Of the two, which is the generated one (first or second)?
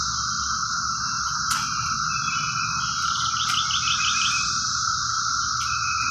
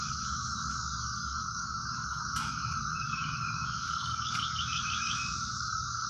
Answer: second